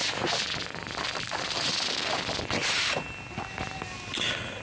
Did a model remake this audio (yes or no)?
no